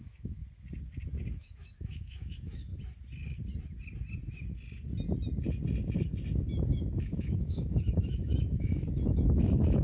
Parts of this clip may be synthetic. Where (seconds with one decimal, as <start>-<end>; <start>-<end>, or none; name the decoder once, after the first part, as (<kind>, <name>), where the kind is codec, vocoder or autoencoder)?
0.0-0.4 (autoencoder, DAC-VAE); 1.3-2.7; 6.6-9.8